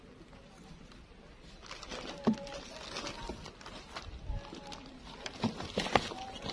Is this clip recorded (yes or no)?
yes